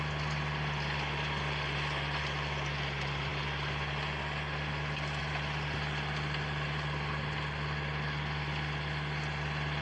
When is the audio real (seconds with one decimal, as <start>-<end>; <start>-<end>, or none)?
0.0-9.8